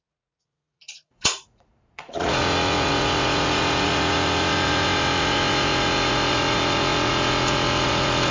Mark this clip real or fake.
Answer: fake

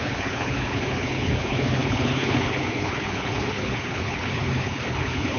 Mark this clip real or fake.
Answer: fake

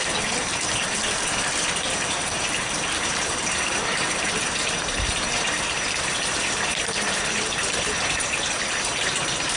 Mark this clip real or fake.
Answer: fake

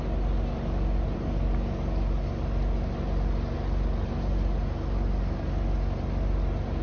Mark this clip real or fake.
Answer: real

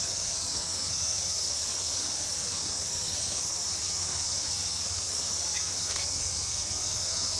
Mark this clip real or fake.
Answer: fake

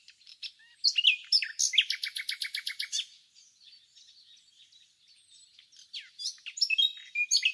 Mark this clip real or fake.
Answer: real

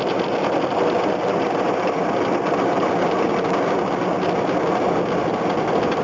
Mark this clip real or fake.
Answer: real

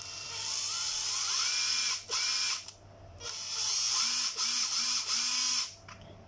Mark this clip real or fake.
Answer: real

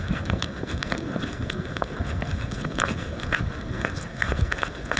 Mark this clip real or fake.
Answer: fake